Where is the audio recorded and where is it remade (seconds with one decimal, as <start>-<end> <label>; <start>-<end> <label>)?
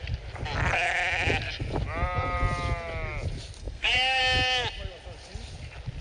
0.0-3.6 recorded; 3.6-4.2 remade; 4.2-6.0 recorded